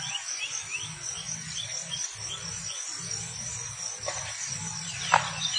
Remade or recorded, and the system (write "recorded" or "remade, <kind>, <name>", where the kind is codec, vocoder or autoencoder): recorded